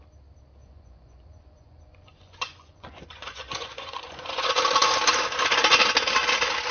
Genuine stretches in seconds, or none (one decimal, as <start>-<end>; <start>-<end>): 0.0-0.6; 4.5-6.7